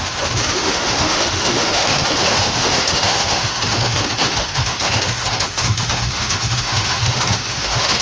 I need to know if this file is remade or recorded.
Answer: remade